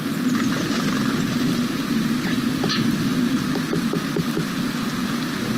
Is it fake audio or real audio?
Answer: real